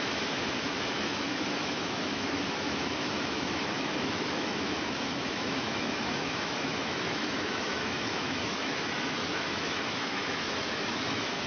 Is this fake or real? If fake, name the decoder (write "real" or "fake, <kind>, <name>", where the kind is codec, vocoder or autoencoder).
fake, autoencoder, DAC-VAE